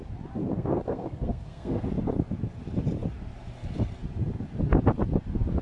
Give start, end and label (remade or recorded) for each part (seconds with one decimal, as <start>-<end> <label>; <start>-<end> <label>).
0.0-0.5 recorded; 0.5-1.9 remade; 1.9-5.6 recorded